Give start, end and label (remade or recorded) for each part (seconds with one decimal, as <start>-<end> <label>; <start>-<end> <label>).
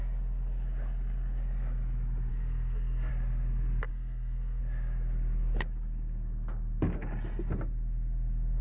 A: 0.0-2.3 recorded; 2.3-3.1 remade; 3.1-3.9 recorded; 3.9-4.6 remade; 4.6-8.6 recorded